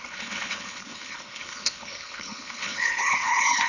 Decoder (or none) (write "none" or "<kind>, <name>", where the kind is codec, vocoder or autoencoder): codec, HILCodec